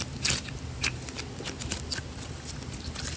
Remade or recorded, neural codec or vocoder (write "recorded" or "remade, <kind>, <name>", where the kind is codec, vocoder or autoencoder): recorded